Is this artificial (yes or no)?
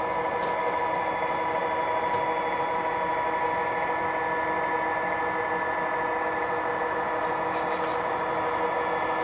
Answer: no